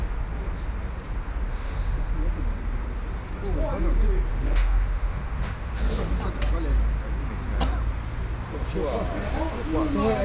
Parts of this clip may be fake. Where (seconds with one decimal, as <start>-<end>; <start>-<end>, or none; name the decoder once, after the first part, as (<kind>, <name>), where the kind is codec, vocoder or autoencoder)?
1.5-2.1 (autoencoder, DAC-VAE); 4.3-6.1